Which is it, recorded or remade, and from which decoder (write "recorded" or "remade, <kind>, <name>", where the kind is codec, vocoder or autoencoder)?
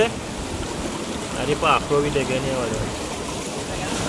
recorded